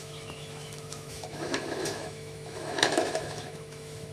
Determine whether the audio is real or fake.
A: fake